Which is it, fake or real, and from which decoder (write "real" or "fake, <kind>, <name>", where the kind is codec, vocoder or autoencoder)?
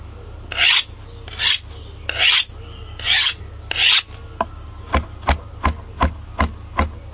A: real